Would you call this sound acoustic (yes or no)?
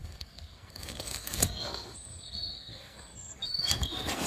no